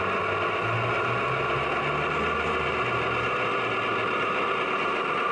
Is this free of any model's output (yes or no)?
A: yes